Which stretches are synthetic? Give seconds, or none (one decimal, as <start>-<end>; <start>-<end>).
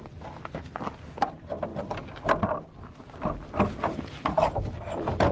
none